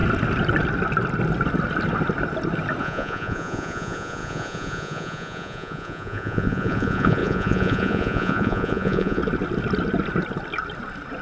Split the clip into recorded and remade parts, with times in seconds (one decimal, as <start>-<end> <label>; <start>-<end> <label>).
0.0-2.8 recorded; 2.8-9.2 remade; 9.2-11.2 recorded